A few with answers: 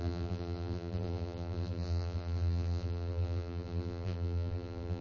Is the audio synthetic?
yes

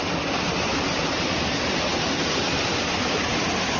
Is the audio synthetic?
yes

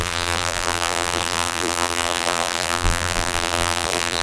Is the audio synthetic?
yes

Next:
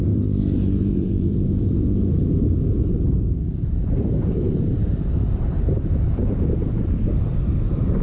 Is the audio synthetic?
yes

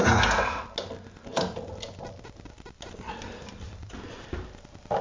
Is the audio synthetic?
no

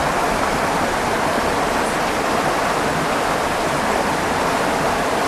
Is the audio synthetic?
yes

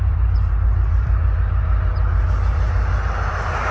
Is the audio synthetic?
yes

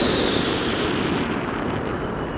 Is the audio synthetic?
no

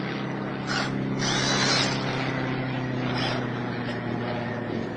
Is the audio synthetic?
no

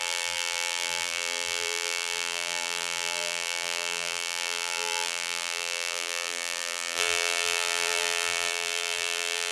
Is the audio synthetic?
yes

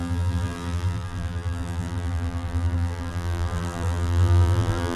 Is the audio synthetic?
yes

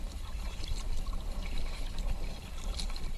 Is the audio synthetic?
yes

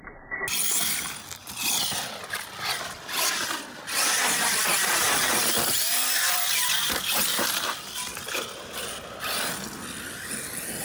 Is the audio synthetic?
no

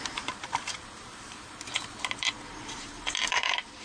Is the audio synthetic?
yes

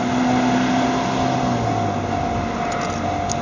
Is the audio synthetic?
no